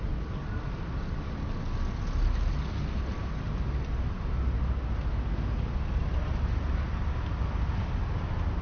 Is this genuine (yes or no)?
yes